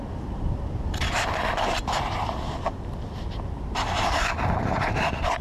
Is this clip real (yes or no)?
yes